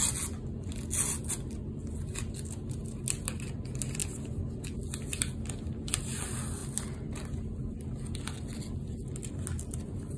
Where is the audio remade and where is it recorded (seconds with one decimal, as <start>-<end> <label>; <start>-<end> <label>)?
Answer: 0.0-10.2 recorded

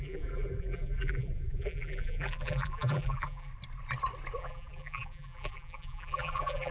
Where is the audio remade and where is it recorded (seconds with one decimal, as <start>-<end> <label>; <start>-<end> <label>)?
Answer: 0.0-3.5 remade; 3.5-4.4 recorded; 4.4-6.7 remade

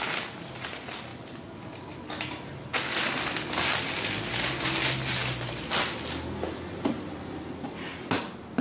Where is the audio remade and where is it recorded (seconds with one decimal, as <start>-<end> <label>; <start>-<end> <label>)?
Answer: 0.0-1.1 recorded; 1.1-2.0 remade; 2.0-8.6 recorded